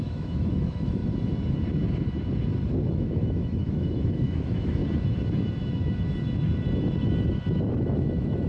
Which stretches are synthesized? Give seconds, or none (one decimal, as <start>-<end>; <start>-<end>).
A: 0.0-1.0; 2.9-4.8; 7.6-8.5

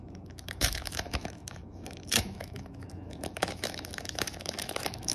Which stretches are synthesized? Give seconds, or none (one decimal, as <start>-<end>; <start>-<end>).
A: 0.0-5.1